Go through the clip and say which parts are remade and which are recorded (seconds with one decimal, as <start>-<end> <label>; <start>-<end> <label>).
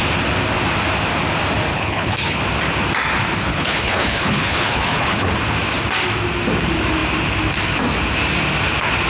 0.0-1.7 recorded; 1.7-2.4 remade; 2.4-3.5 recorded; 3.5-5.3 remade; 5.3-9.1 recorded